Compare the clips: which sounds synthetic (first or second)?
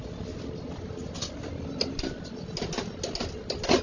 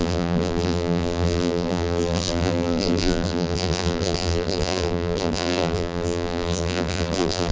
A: second